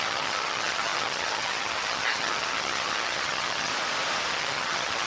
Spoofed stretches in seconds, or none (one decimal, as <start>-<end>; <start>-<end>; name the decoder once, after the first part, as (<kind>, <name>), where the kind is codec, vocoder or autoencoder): 0.0-3.7 (vocoder, HiFi-GAN); 4.3-5.1